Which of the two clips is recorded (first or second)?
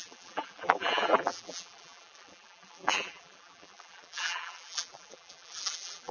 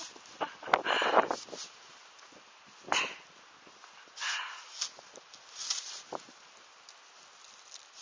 second